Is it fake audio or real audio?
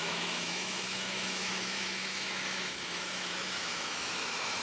fake